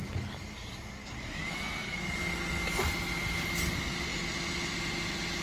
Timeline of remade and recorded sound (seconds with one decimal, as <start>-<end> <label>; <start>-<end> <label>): 0.0-5.4 recorded